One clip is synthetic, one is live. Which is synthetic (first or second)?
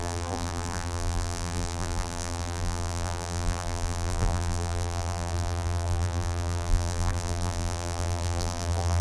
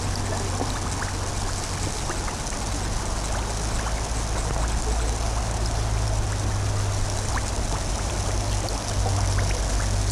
first